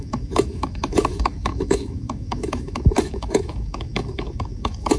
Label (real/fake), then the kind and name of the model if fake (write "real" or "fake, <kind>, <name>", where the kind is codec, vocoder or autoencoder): fake, autoencoder, DAC-VAE